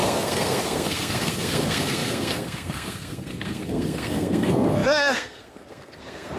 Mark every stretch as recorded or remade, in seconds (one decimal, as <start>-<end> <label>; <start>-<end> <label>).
0.0-6.4 remade